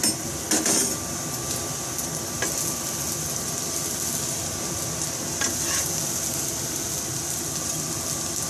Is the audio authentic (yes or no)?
yes